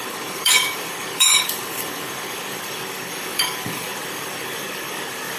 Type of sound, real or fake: fake